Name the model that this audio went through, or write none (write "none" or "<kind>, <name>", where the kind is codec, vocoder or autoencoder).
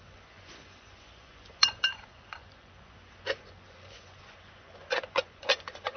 vocoder, Vocos